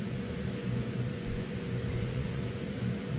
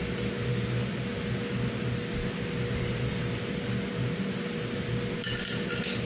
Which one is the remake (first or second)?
first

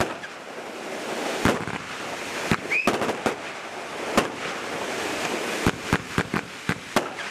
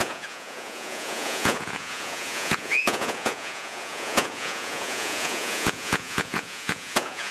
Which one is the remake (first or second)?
second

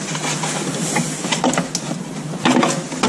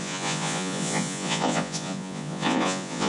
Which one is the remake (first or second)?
second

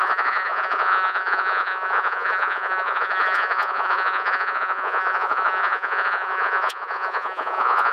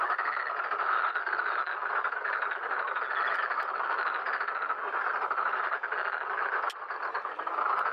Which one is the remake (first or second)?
first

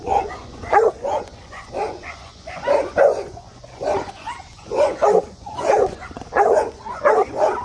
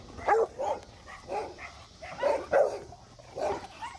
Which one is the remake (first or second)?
first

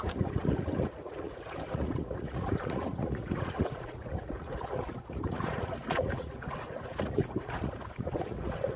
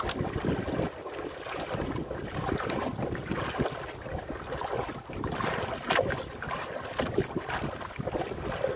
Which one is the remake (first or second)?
first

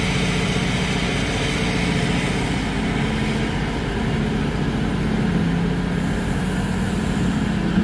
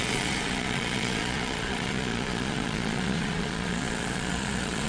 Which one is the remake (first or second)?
second